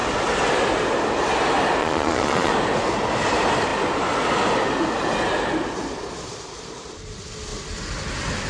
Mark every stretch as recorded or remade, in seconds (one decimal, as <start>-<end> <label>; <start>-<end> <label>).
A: 0.0-1.8 recorded; 1.8-2.5 remade; 2.5-8.5 recorded